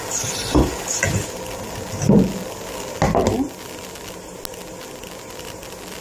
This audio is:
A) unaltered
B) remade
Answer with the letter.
A